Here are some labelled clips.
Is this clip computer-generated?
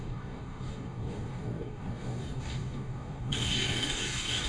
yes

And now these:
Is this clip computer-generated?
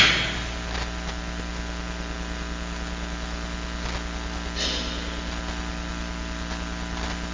no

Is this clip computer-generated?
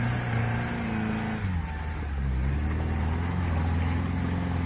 no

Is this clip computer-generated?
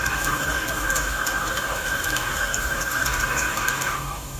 yes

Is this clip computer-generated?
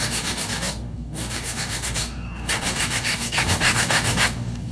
yes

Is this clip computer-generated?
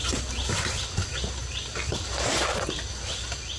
no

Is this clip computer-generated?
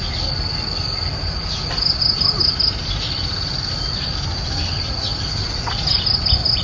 no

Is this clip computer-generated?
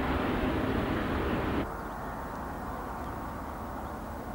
no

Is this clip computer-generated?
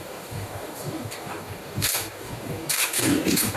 yes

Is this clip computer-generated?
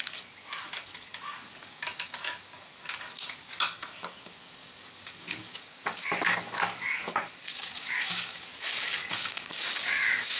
yes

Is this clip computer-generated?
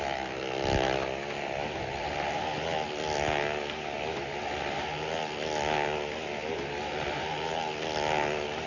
no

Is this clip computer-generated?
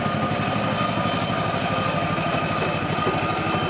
no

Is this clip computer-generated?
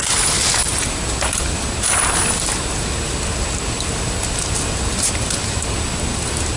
no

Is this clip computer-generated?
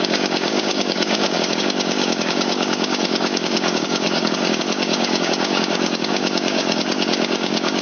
yes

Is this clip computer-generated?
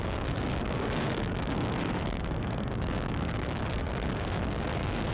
yes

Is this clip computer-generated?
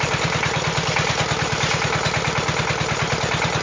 no